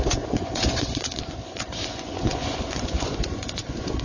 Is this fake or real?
fake